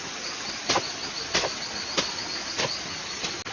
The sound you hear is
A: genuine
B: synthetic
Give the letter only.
A